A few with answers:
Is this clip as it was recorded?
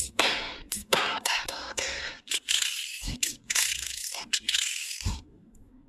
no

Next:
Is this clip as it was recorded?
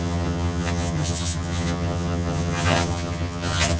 no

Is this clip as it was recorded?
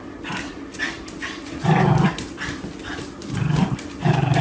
no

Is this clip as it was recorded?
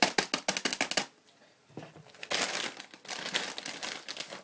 yes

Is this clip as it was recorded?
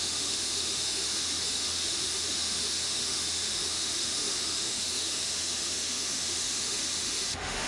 no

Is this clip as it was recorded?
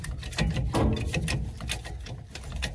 yes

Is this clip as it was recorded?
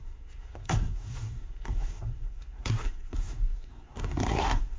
no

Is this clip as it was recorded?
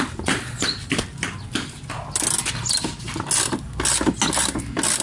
yes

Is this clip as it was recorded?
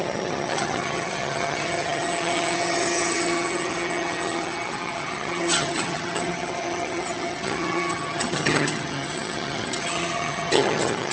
no